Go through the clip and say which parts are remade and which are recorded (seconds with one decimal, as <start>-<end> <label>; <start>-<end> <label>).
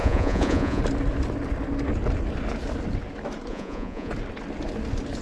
0.0-0.8 remade; 0.8-3.5 recorded; 3.5-4.1 remade; 4.1-5.2 recorded